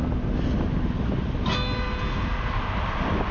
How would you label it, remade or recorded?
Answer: recorded